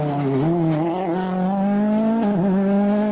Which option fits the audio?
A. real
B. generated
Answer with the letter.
A